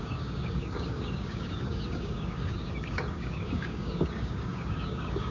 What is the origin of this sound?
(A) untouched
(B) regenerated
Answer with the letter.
B